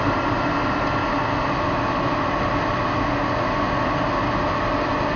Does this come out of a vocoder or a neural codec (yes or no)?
no